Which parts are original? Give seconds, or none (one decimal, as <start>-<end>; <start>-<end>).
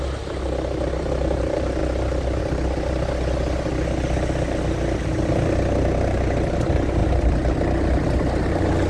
0.0-8.9